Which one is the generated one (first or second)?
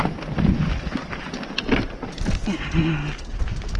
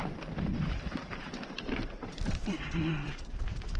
second